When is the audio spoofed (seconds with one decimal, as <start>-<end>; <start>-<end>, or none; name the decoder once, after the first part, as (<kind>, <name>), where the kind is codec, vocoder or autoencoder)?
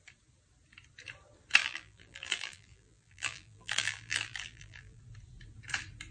1.6-5.0 (vocoder, BigVGAN v2)